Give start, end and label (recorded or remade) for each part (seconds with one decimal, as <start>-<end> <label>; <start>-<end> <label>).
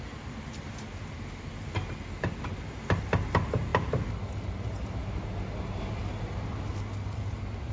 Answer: 0.0-7.7 recorded